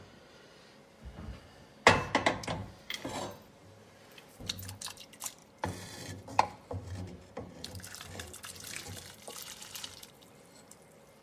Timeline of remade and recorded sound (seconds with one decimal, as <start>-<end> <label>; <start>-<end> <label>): 0.0-2.6 recorded; 2.6-3.1 remade; 3.1-5.4 recorded; 5.4-10.1 remade; 10.1-11.2 recorded